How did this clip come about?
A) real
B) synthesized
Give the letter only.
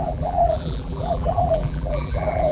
B